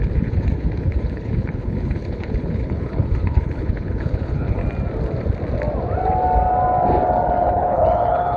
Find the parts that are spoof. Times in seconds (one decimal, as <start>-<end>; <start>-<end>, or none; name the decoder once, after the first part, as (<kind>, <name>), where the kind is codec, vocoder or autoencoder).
0.0-4.6 (codec, HILCodec); 7.4-8.4